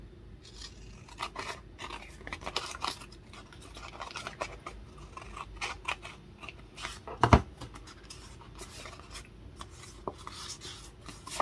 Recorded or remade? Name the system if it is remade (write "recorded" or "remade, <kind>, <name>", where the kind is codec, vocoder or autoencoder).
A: recorded